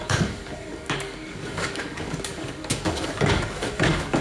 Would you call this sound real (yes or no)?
no